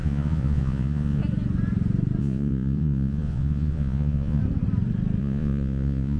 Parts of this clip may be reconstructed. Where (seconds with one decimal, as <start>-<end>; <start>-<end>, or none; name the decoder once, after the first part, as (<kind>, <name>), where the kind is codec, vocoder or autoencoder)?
0.0-1.2 (vocoder, Vocos); 2.2-4.4; 5.2-6.2